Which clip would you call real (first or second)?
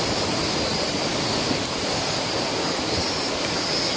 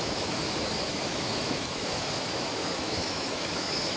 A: first